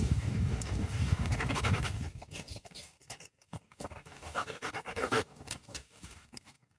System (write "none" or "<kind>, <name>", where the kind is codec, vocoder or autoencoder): codec, DAC